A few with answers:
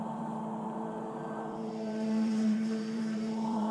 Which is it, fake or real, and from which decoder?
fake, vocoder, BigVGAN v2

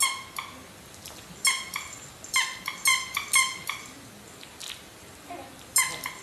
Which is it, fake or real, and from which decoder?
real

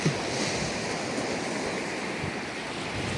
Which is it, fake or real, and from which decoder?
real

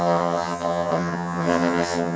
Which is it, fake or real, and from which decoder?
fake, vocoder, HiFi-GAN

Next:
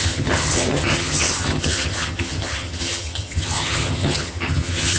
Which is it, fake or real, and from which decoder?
fake, vocoder, HiFi-GAN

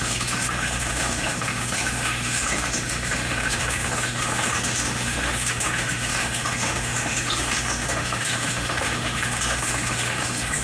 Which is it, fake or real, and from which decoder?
fake, autoencoder, DAC-VAE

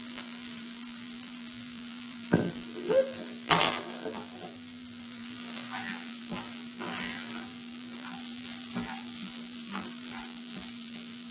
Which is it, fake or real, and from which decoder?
fake, vocoder, BigVGAN v2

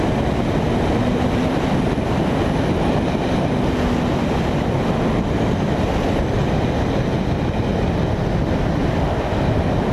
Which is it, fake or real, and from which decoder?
real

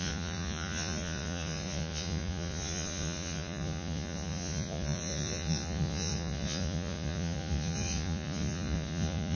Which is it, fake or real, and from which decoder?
fake, vocoder, Vocos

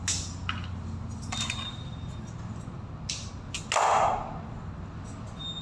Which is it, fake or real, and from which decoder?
real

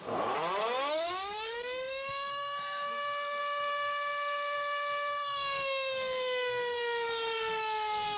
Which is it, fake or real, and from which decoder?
fake, codec, SNAC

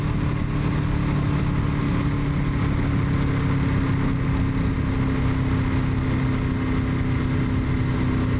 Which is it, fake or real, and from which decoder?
real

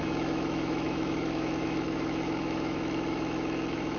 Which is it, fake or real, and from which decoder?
fake, autoencoder, DAC-VAE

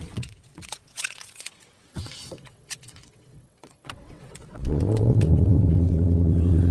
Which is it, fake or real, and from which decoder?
fake, vocoder, WaveNeXt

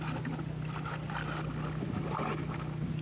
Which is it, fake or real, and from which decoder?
real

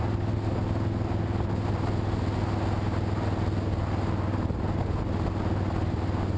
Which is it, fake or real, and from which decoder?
real